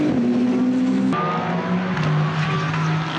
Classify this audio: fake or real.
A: real